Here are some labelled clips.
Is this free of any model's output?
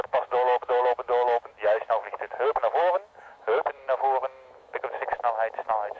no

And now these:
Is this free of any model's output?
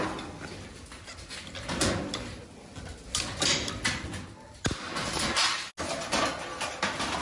yes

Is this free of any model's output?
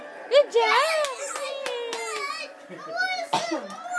yes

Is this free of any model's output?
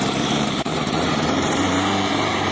no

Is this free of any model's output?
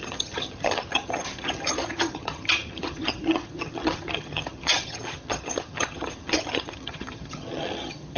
no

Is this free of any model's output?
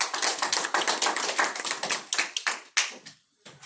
yes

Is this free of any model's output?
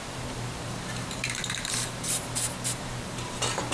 no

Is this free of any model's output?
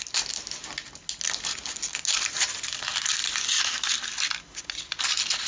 yes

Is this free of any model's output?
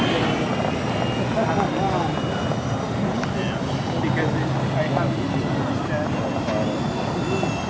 yes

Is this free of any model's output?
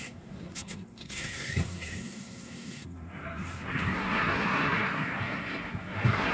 no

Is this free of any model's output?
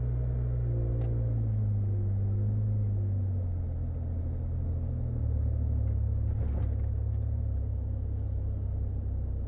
yes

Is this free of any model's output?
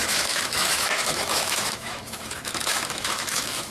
no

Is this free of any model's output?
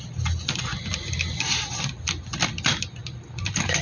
yes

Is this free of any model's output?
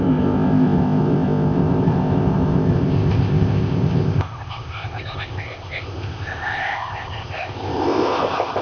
no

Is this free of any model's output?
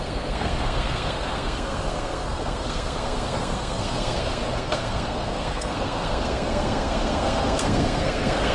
no